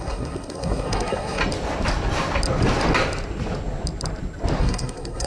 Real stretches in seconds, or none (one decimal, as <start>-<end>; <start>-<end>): 1.4-4.6